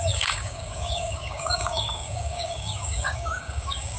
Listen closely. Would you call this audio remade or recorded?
remade